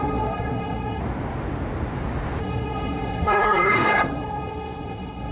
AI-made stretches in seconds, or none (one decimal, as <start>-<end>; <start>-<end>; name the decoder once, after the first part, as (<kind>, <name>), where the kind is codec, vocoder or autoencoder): 0.0-1.0 (codec, SNAC); 2.4-5.3